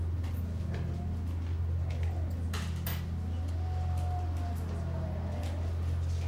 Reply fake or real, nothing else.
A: real